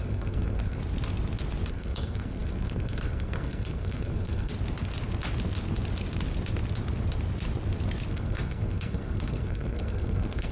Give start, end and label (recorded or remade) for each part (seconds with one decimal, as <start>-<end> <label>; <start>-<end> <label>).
0.0-0.8 remade; 0.8-1.7 recorded; 1.7-4.5 remade; 4.5-8.1 recorded; 8.1-10.5 remade